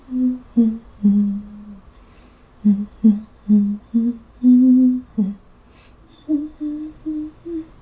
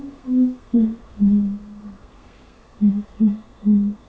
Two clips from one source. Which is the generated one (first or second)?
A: second